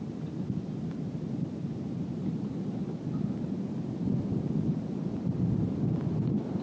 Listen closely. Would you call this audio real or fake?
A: real